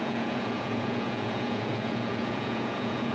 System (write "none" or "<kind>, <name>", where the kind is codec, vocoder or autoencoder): vocoder, Vocos